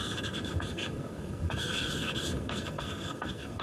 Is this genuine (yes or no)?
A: no